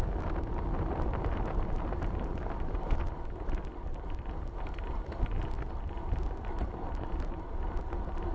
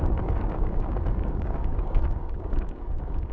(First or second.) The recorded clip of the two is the first